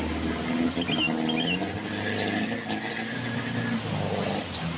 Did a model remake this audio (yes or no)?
no